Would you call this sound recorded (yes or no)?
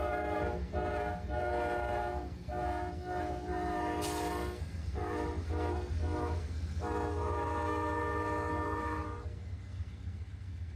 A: no